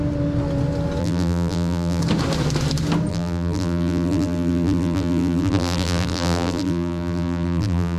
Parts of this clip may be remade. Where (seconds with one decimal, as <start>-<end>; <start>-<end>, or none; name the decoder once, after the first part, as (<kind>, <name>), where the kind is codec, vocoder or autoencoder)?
1.0-2.0 (vocoder, BigVGAN v2); 3.1-8.0